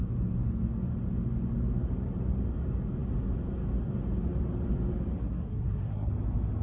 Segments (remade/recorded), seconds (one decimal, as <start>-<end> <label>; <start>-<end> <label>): 0.0-5.2 recorded; 5.2-6.1 remade; 6.1-6.6 recorded